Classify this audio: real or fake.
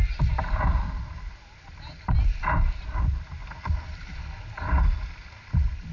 real